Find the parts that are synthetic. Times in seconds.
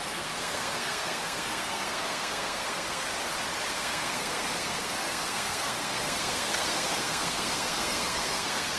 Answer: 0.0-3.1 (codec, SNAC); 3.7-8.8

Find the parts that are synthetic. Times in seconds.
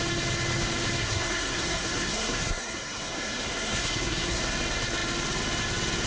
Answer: 1.0-4.4 (codec, SNAC)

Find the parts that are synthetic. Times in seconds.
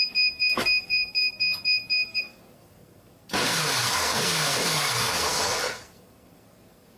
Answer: 0.0-7.0 (codec, SNAC)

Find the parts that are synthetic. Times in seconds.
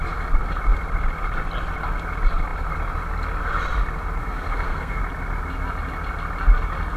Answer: 4.2-5.0 (codec, SNAC)